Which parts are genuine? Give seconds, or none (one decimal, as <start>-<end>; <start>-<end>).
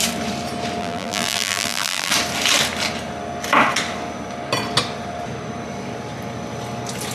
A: 0.0-0.8; 2.1-7.1